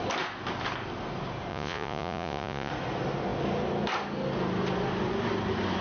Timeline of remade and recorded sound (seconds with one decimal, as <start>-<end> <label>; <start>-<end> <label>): 0.0-1.5 recorded; 1.5-2.7 remade; 2.7-5.8 recorded